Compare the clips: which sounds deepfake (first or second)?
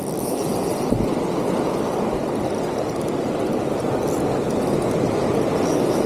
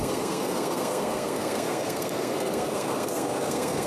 second